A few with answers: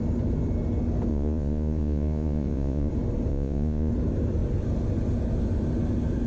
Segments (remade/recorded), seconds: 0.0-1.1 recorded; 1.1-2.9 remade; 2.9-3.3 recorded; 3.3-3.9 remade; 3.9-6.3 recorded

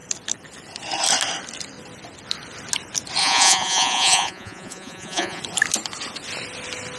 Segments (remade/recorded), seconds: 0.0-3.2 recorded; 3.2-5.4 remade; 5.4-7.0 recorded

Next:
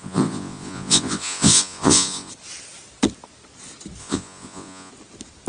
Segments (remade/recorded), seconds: 0.0-2.3 remade; 2.3-4.0 recorded; 4.0-4.9 remade; 4.9-5.5 recorded

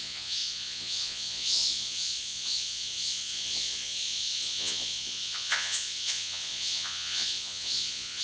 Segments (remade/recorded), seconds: 0.0-8.2 remade

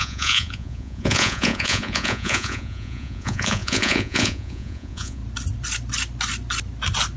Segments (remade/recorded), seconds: 0.0-5.2 remade; 5.2-7.2 recorded

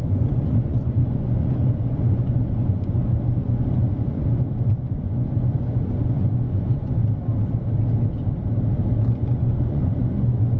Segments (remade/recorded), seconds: 0.0-7.0 remade; 7.0-9.0 recorded; 9.0-10.6 remade

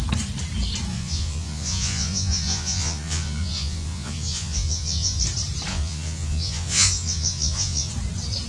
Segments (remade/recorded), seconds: 0.0-0.9 recorded; 0.9-5.2 remade; 5.2-5.7 recorded; 5.7-7.9 remade; 7.9-8.5 recorded

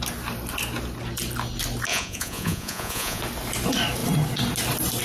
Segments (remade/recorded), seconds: 0.0-1.9 recorded; 1.9-3.2 remade; 3.2-5.0 recorded